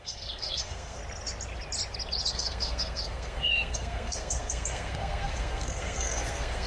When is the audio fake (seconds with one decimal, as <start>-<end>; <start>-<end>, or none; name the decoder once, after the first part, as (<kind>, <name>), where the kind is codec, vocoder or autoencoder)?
0.0-1.0 (codec, SNAC); 2.3-6.7